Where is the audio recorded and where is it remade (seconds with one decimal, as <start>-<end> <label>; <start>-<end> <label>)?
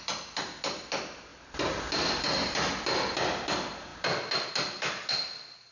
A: 0.0-5.7 recorded